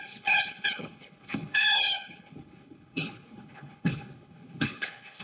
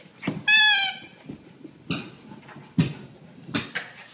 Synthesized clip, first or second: first